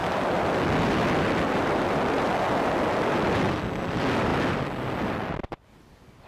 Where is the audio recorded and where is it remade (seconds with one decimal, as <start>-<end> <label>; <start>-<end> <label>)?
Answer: 0.0-6.3 recorded